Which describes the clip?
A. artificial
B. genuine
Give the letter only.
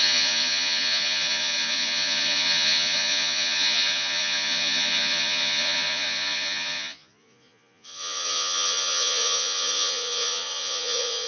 A